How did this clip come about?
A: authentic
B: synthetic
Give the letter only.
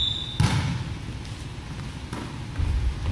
A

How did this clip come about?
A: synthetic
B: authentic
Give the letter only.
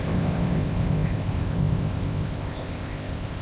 A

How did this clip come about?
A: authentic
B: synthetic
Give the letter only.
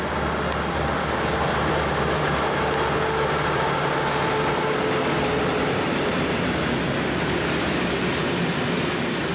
A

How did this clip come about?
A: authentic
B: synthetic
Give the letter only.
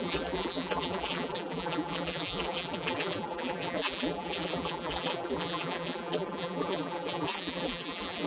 B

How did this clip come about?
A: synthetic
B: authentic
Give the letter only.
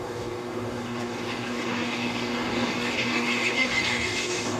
A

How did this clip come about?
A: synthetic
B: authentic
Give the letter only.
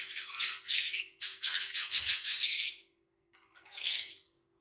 A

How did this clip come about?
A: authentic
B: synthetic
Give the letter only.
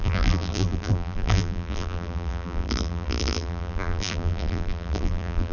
B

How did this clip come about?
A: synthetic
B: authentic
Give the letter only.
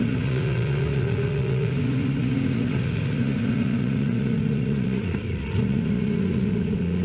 A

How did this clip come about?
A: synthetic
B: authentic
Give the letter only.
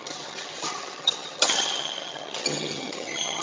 A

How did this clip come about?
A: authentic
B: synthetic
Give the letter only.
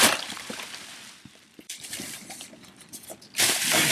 B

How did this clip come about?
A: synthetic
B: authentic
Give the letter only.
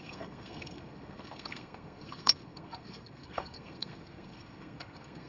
A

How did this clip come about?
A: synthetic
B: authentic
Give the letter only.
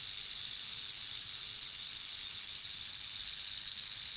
B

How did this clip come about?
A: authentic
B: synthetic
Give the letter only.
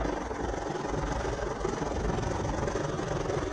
A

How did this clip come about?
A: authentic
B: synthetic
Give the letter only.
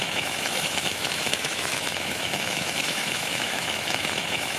B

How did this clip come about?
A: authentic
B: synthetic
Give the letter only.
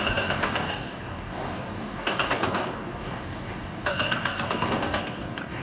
B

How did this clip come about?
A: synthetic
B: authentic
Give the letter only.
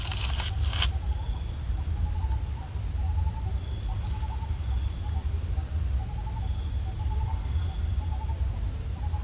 B